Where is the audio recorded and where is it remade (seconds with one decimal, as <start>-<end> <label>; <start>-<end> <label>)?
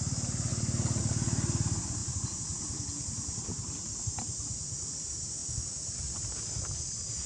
0.0-7.3 recorded